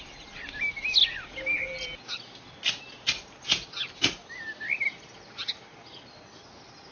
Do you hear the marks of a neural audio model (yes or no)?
no